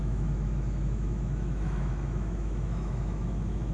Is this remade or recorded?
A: remade